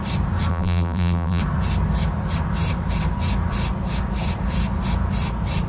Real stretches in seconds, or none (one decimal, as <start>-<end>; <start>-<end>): 0.0-0.5; 1.4-5.7